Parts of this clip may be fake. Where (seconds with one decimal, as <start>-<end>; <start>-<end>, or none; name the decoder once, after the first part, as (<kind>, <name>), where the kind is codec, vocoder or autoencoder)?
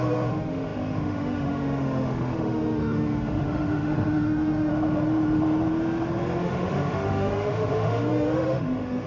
0.0-4.7 (autoencoder, DAC-VAE); 6.4-9.1